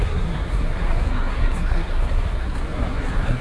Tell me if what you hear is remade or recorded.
remade